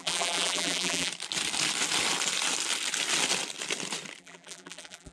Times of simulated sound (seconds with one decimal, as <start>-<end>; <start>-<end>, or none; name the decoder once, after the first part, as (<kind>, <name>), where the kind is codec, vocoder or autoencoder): 0.0-1.1 (vocoder, BigVGAN v2); 4.2-5.1